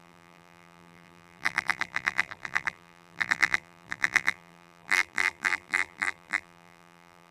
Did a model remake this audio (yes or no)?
yes